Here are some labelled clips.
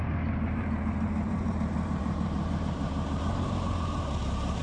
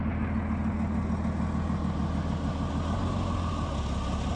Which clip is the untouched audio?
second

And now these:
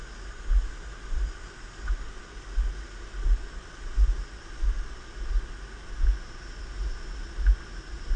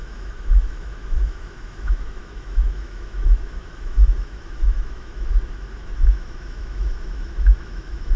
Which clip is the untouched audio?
first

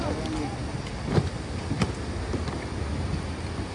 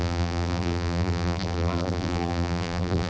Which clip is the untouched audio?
first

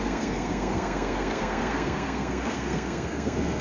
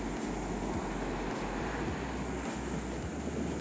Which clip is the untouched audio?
second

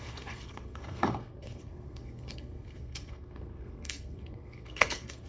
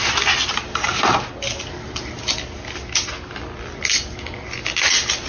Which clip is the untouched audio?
second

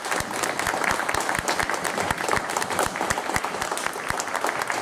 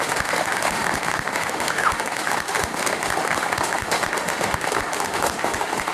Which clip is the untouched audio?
first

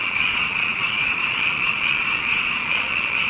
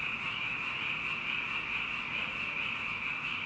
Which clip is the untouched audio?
second